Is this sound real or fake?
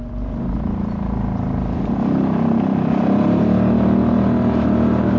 real